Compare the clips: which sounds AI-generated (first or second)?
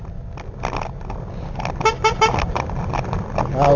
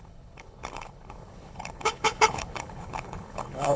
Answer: second